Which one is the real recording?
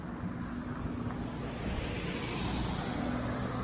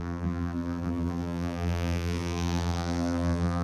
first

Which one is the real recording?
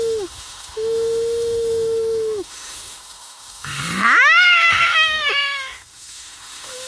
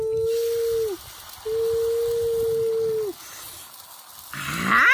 second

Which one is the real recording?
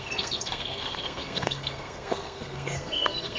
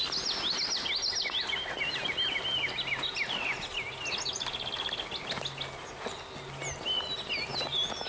second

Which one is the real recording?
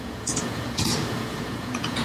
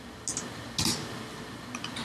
second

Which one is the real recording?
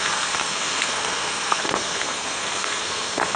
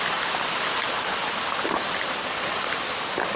second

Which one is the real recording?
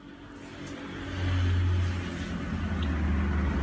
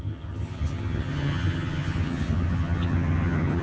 first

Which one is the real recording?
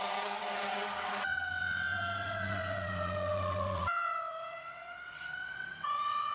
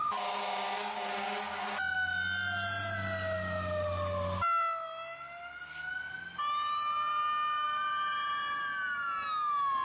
second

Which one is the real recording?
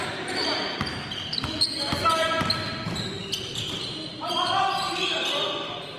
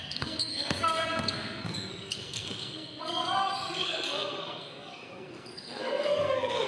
first